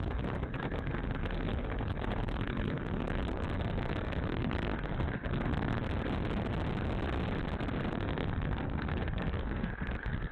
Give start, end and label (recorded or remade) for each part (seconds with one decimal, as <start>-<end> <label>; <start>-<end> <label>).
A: 0.0-5.8 remade; 5.8-7.9 recorded; 7.9-10.3 remade